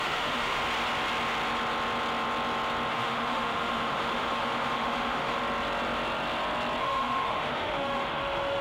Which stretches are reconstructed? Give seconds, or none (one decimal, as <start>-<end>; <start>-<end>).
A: 0.0-0.6; 2.9-5.4; 6.8-8.6